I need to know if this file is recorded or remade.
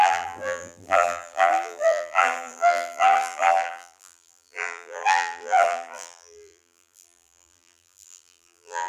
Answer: remade